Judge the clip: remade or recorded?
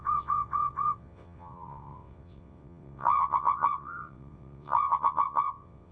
remade